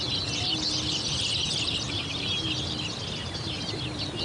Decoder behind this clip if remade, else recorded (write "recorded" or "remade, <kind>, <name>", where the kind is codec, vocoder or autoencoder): recorded